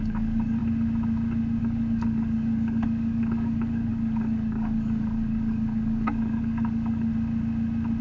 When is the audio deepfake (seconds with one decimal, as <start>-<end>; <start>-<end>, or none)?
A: 0.0-0.6; 1.6-7.1